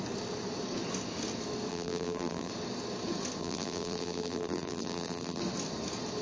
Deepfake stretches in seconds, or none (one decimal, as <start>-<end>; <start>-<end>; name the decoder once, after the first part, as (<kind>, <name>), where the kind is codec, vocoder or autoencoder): 1.7-2.5 (vocoder, BigVGAN v2); 3.4-5.4